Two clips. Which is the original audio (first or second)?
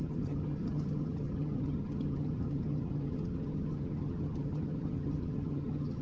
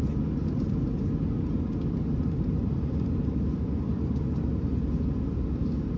second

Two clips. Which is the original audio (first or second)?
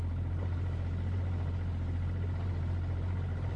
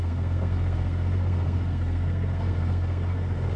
first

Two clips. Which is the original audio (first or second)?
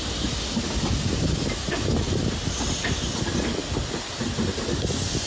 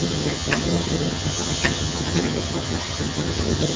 first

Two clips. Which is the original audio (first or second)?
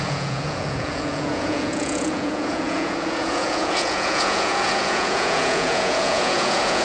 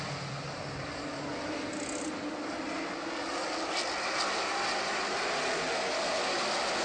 second